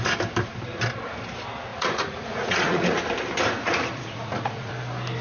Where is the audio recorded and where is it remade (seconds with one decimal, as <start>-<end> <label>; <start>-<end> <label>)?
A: 0.0-1.7 recorded; 1.7-2.9 remade; 2.9-3.6 recorded; 3.6-4.7 remade; 4.7-5.2 recorded